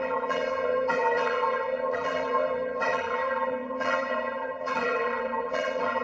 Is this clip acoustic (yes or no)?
no